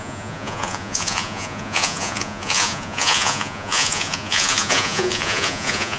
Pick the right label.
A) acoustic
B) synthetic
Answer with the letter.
B